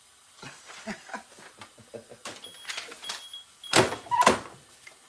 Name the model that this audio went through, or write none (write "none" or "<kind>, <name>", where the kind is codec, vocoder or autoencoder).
none